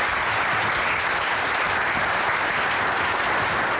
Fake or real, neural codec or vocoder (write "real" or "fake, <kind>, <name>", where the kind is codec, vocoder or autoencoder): real